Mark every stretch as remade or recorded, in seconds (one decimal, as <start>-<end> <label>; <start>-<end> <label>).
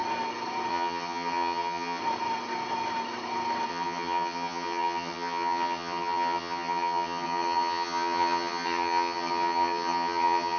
0.0-0.7 recorded; 0.7-2.0 remade; 2.0-3.7 recorded; 3.7-10.6 remade